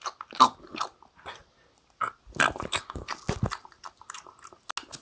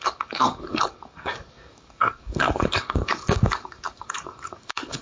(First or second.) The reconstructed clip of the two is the second